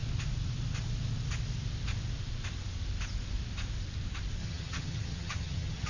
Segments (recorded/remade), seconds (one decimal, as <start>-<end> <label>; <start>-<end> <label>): 0.0-4.4 recorded; 4.4-5.9 remade